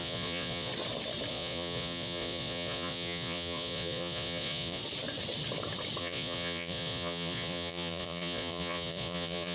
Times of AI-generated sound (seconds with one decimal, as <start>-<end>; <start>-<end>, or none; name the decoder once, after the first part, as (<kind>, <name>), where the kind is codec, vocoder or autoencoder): 0.0-0.7 (vocoder, Vocos); 1.3-4.8; 6.0-9.5